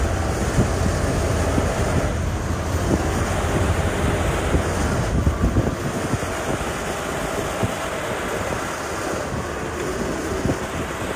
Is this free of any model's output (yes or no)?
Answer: yes